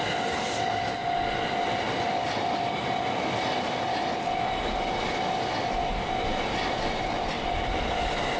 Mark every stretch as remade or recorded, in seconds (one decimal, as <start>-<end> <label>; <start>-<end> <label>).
0.0-8.4 recorded